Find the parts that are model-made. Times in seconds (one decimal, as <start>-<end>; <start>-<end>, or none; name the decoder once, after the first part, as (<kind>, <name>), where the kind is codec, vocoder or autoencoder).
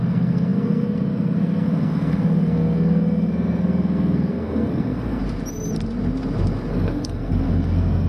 0.0-5.2 (codec, SNAC); 6.7-8.1